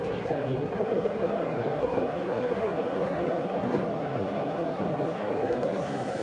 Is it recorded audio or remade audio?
remade